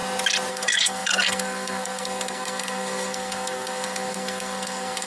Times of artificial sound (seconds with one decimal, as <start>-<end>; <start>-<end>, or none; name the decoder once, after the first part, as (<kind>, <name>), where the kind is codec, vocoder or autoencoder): 0.5-5.1 (codec, SNAC)